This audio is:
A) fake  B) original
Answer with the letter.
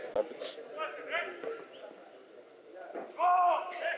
B